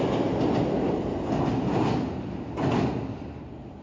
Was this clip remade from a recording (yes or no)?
no